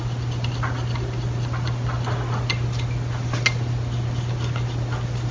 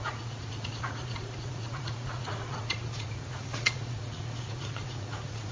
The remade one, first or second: second